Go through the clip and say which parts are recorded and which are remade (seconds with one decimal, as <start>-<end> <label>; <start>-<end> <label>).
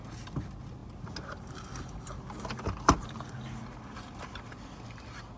0.0-5.4 recorded